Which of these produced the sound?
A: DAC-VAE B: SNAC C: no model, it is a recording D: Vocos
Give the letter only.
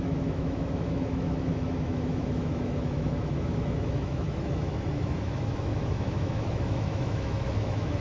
A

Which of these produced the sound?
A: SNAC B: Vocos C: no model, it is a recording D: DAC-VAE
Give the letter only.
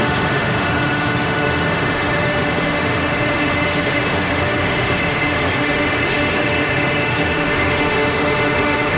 D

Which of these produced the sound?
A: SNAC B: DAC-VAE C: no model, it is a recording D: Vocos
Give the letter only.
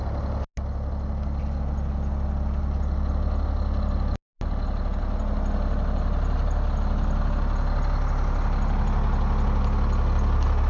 C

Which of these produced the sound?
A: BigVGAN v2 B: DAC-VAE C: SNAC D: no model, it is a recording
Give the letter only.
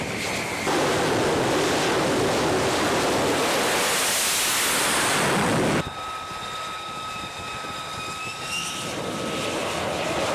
D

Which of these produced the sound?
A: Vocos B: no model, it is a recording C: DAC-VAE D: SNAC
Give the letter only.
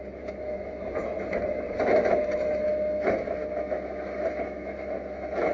C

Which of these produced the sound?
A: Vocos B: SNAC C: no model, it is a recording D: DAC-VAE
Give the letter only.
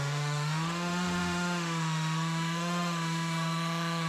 D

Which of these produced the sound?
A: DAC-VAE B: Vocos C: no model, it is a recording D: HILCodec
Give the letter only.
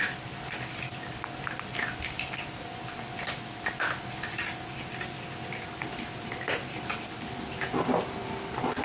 C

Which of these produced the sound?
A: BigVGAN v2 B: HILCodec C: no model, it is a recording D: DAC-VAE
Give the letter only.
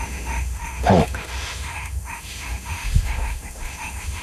D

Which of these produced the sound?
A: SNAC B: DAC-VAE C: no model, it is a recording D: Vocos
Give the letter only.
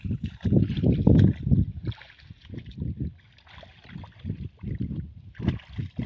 C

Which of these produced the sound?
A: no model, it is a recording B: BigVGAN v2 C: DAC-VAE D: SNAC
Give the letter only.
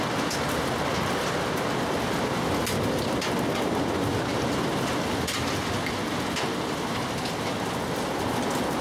A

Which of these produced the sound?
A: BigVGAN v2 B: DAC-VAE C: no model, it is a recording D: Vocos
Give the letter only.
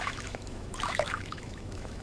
B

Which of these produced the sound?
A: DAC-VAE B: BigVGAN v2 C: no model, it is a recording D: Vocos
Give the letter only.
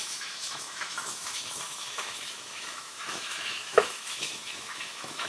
A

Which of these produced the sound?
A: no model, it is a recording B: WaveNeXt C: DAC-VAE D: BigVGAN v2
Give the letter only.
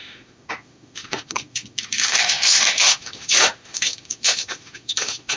C